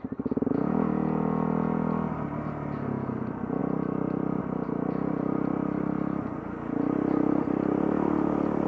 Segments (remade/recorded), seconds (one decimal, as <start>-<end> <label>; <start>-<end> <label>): 0.0-8.7 recorded